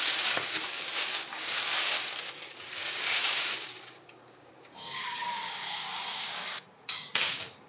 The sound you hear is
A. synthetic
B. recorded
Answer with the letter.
A